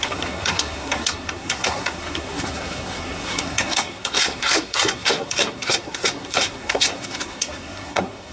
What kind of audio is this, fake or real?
fake